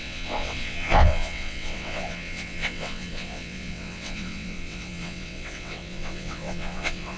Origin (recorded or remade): remade